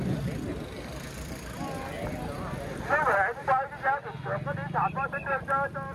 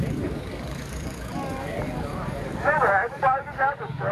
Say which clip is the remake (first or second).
second